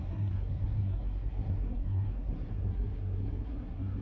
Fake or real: fake